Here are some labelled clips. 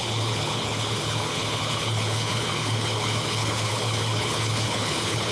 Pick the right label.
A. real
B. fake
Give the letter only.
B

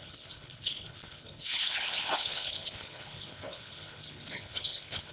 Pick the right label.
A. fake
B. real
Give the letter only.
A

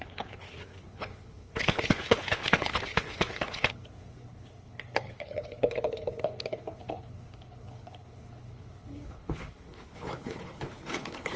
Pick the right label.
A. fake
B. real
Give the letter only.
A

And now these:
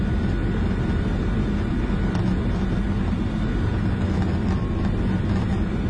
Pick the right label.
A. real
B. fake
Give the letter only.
A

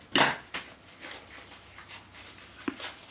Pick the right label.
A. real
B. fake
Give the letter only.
A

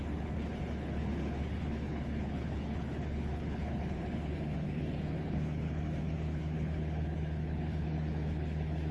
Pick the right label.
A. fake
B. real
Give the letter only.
A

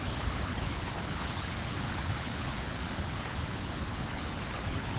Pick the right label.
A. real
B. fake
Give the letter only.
B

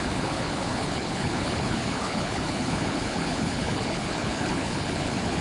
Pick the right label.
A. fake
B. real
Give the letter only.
A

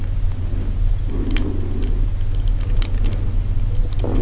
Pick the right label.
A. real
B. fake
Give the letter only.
A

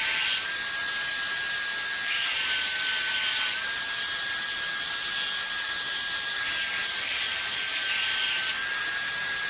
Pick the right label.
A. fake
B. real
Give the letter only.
B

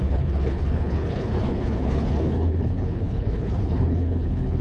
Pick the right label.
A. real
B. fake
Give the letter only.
B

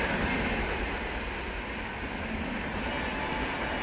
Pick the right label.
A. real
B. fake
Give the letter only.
A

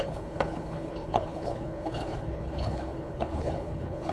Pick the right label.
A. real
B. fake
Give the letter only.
B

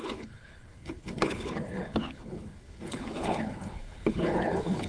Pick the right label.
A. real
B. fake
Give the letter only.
B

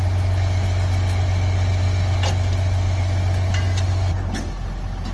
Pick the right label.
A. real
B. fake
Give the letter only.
A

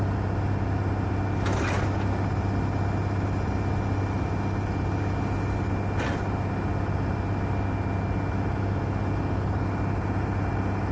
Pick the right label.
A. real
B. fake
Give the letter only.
A